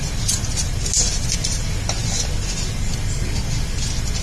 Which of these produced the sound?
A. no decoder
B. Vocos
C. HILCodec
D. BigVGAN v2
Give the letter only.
A